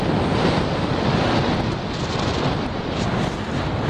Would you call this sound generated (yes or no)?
no